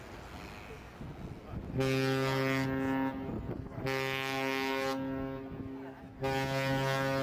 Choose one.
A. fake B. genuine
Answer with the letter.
B